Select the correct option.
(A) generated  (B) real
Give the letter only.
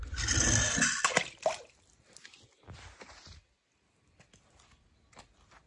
B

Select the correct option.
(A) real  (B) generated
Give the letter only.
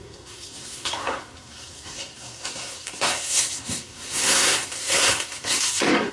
B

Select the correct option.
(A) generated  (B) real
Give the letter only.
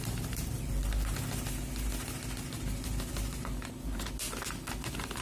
B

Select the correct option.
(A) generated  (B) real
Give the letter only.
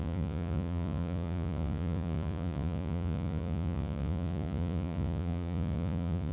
A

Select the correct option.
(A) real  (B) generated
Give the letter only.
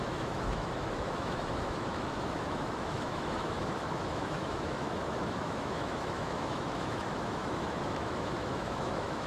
B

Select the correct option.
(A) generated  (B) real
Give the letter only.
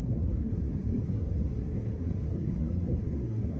A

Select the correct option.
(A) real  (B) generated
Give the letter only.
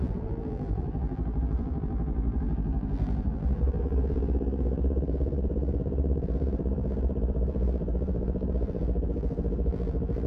B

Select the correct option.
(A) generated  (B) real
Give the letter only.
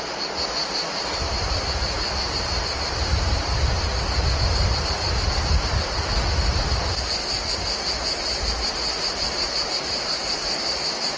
B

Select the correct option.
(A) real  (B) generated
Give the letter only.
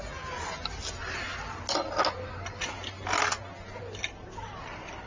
A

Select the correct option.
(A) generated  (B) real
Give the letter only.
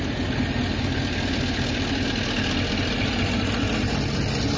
B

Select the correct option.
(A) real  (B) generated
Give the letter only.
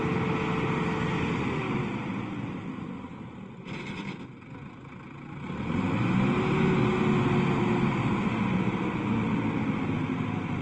A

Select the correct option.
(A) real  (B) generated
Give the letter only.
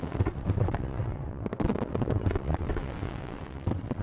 B